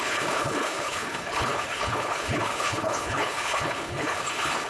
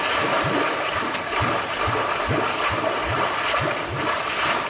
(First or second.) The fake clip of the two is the first